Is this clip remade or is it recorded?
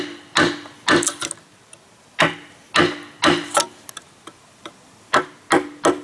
recorded